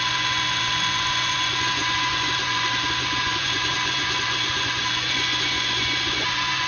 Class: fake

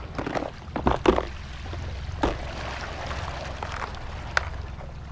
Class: real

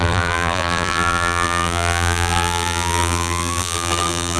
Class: fake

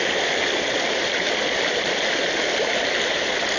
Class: real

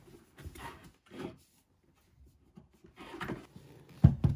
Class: real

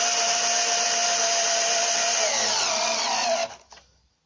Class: real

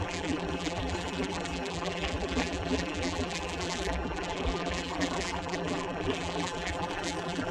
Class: fake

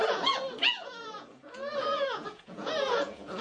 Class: fake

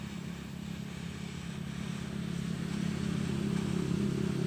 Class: real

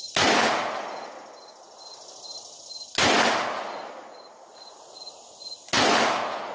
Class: real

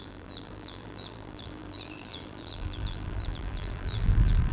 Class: fake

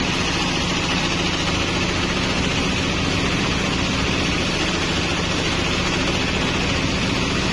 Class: real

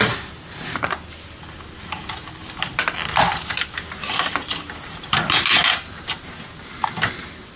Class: fake